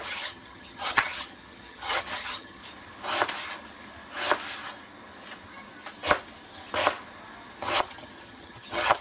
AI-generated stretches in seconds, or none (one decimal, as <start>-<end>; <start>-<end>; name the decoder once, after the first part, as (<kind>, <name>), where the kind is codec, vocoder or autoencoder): 0.0-2.6 (vocoder, HiFi-GAN); 7.8-9.0